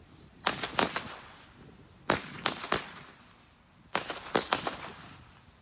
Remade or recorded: recorded